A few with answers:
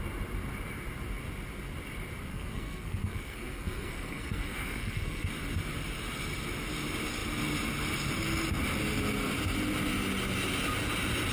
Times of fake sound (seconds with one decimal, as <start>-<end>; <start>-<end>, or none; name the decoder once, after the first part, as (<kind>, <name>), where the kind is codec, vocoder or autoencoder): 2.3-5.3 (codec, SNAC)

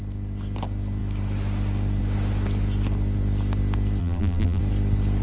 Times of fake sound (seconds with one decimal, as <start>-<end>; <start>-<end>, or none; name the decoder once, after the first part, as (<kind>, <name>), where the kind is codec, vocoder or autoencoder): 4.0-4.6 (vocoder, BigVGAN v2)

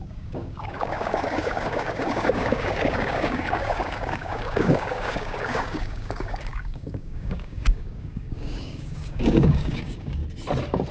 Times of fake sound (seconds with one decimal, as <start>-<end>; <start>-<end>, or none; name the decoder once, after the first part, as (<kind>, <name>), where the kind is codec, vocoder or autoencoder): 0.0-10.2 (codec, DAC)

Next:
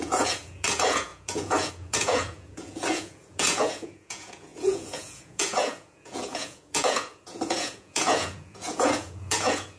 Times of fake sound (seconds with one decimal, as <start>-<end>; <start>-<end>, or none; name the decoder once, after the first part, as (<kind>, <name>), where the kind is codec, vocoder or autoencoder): 0.0-9.8 (vocoder, Vocos)

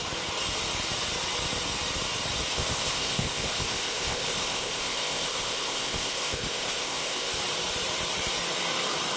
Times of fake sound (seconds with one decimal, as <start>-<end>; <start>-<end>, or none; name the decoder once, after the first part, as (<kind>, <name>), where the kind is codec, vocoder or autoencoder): 2.5-7.3 (codec, ZipCodec)

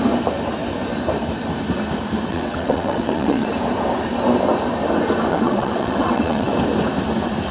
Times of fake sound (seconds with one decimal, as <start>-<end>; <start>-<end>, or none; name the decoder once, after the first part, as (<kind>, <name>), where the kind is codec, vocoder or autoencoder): 2.3-3.5 (vocoder, WaveNeXt); 5.3-6.5